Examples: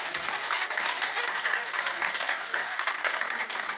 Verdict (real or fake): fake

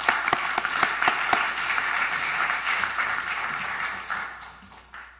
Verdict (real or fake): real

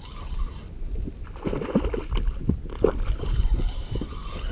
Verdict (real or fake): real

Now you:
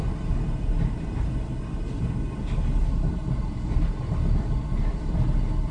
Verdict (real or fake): real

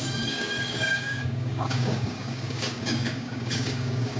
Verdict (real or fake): fake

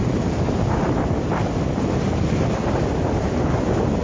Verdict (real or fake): real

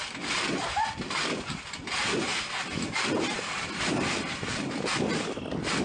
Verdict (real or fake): real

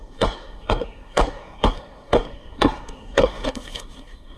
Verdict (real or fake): fake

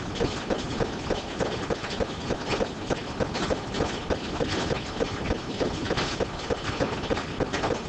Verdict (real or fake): real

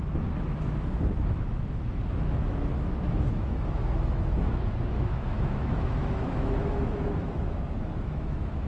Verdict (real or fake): fake